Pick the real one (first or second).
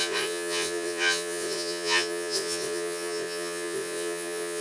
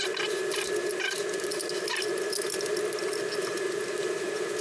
second